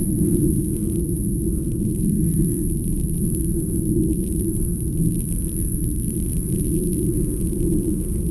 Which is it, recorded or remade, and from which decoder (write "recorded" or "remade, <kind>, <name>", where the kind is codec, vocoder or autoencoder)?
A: remade, autoencoder, DAC-VAE